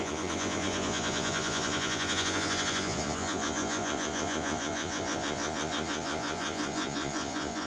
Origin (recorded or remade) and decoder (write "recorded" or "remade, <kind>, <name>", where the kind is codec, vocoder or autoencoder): remade, vocoder, Vocos